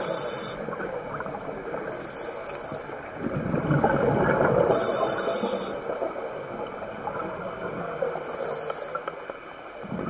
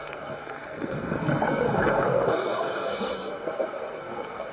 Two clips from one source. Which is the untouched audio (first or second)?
first